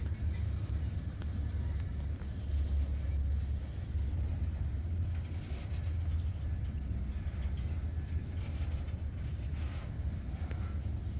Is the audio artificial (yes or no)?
no